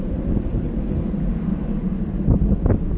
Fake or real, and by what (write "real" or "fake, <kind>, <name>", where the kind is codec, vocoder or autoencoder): real